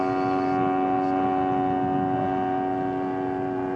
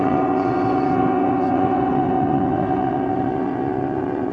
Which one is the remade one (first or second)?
second